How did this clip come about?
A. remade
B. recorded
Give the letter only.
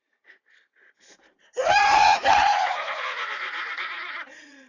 A